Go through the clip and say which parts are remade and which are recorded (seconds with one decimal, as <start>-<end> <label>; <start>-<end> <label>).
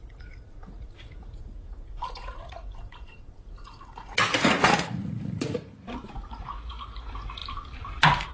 0.0-7.4 remade; 7.4-8.3 recorded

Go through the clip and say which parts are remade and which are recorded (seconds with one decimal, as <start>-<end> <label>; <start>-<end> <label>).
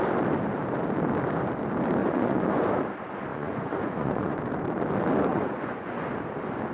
0.0-2.0 recorded; 2.0-2.8 remade; 2.8-3.3 recorded; 3.3-4.4 remade; 4.4-5.3 recorded; 5.3-6.1 remade; 6.1-6.7 recorded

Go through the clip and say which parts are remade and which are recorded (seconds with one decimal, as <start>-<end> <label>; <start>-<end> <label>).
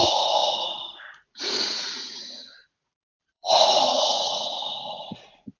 0.0-5.6 remade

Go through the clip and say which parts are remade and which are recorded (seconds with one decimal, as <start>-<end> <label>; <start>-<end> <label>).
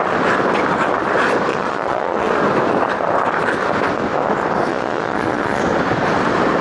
0.0-1.5 recorded; 1.5-2.3 remade; 2.3-4.7 recorded; 4.7-5.6 remade; 5.6-6.6 recorded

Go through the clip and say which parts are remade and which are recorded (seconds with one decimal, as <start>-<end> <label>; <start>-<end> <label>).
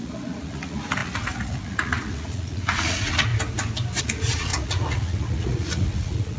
0.0-3.3 remade; 3.3-4.0 recorded; 4.0-6.4 remade